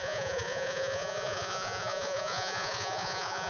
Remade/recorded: remade